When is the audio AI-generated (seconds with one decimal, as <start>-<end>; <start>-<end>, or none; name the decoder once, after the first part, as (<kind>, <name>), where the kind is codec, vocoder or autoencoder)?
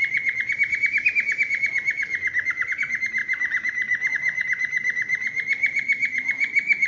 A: none